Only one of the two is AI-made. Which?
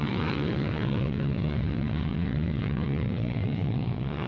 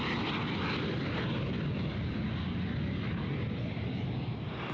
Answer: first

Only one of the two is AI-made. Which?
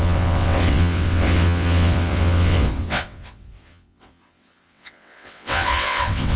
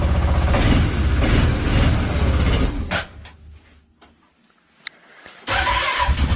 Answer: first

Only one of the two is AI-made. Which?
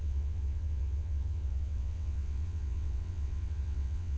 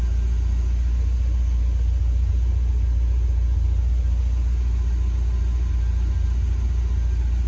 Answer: first